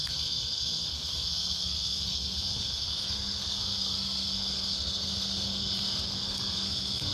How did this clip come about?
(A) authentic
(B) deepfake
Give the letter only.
B